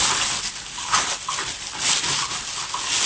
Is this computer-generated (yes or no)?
no